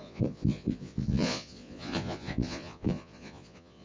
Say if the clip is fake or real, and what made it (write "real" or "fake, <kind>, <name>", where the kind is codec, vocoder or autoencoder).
fake, vocoder, Vocos